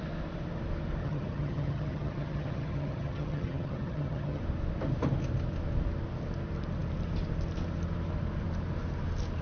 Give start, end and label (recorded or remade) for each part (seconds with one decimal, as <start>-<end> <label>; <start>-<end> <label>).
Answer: 0.0-1.0 recorded; 1.0-4.4 remade; 4.4-9.4 recorded